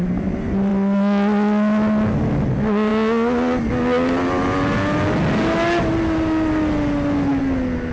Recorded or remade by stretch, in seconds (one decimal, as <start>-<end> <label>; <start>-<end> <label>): 0.0-7.9 recorded